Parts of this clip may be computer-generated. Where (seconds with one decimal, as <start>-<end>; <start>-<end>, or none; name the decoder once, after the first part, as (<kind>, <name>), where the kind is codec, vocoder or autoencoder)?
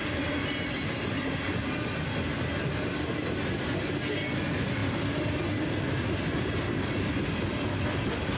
none